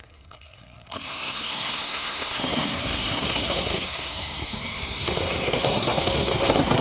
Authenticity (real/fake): fake